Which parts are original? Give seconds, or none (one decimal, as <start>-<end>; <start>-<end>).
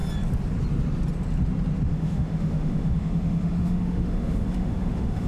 0.0-1.9